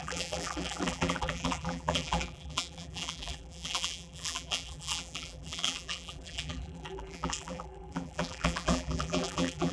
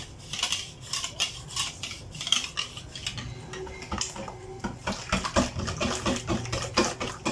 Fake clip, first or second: first